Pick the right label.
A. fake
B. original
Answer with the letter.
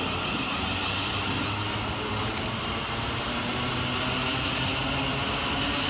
B